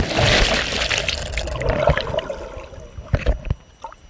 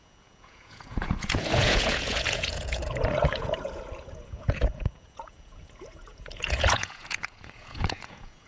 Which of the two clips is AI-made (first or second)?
second